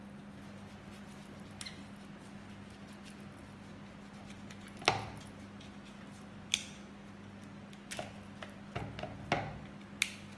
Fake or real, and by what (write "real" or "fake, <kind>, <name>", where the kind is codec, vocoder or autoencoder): real